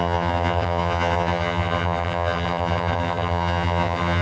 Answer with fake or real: fake